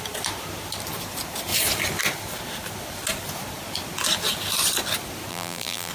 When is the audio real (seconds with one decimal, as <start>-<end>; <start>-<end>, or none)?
0.0-5.3